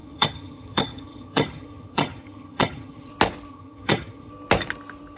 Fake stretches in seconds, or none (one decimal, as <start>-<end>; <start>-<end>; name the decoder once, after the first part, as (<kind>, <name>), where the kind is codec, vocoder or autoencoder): 0.0-3.1 (vocoder, HiFi-GAN); 3.5-4.3